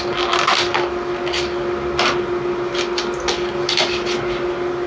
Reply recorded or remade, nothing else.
recorded